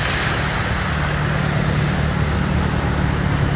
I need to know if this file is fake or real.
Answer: real